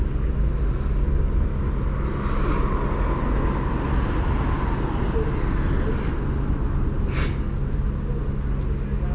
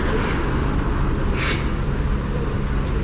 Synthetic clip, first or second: second